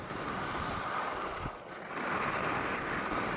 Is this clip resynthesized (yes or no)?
yes